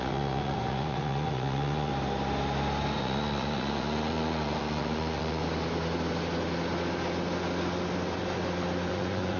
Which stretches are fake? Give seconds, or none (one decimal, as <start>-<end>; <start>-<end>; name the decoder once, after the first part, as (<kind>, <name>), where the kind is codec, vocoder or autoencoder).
0.0-1.9 (vocoder, Vocos); 3.0-5.4; 8.9-9.4